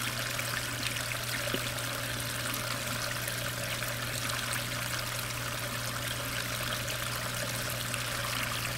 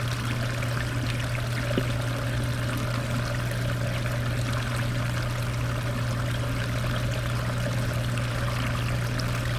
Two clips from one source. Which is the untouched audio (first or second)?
first